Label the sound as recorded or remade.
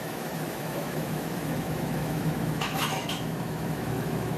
remade